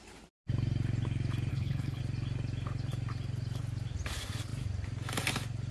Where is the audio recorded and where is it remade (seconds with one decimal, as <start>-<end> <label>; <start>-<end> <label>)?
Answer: 0.0-1.5 recorded; 1.5-2.0 remade; 2.0-5.7 recorded